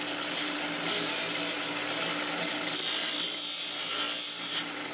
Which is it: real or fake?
real